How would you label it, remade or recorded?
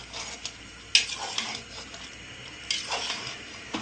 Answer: recorded